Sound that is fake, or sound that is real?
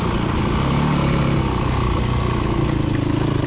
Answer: real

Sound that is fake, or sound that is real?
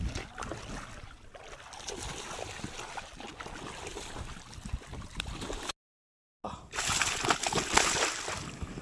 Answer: real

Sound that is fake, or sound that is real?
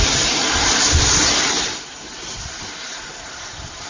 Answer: real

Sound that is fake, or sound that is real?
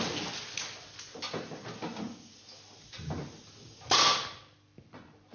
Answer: real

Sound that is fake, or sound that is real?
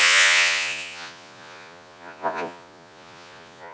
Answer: fake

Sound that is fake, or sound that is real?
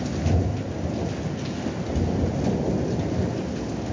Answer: real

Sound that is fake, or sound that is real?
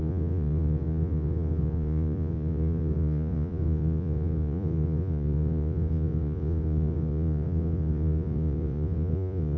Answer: fake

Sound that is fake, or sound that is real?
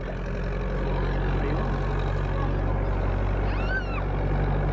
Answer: real